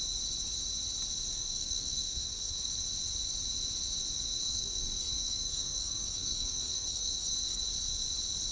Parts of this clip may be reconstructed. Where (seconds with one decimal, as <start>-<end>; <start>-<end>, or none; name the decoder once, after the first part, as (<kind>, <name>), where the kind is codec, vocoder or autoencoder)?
1.3-2.7 (codec, SNAC); 4.4-7.6